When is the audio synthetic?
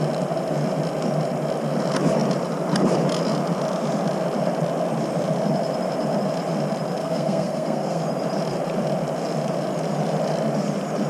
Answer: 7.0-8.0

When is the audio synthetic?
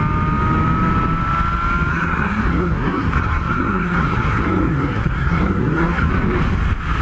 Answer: 1.9-6.1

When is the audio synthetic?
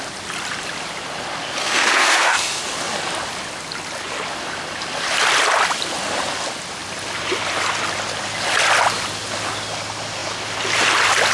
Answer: 1.6-2.6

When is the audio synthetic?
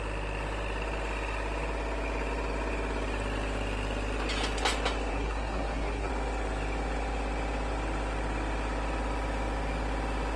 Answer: 5.1-6.1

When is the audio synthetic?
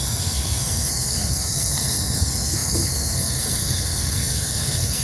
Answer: 0.0-5.0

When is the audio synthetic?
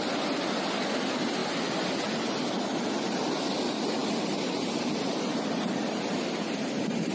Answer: none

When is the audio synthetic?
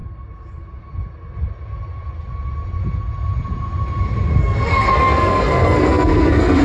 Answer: 4.4-6.6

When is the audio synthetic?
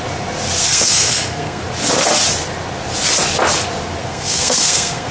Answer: 0.6-1.6; 4.0-5.1